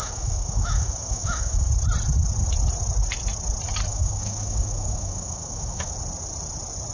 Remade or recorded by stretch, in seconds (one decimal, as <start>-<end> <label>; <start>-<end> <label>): 0.0-1.7 remade; 1.7-3.9 recorded; 3.9-5.9 remade; 5.9-6.9 recorded